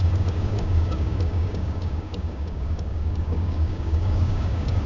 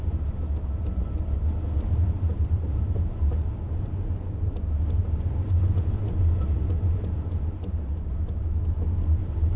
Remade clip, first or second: first